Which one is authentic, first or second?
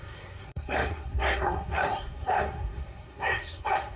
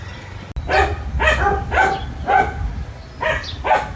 second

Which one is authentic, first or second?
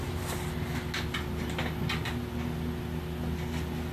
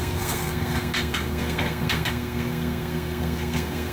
first